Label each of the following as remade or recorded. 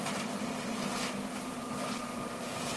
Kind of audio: remade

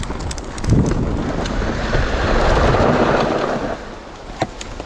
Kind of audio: recorded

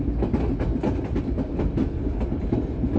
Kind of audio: recorded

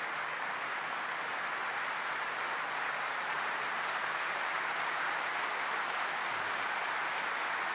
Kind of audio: remade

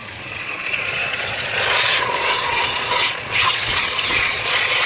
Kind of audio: remade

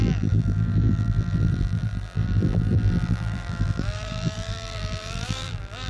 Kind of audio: remade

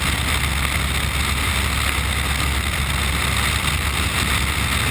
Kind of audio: recorded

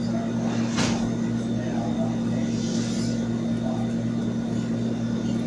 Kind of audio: recorded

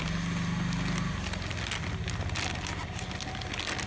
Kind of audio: recorded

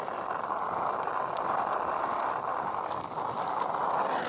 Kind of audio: recorded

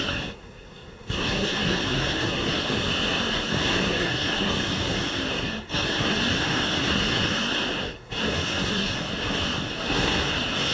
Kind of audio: remade